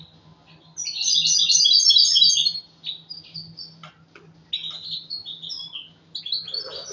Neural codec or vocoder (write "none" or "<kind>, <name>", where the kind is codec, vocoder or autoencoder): none